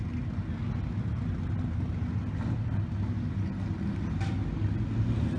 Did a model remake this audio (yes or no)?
no